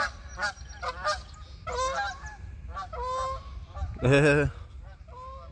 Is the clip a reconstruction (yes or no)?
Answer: no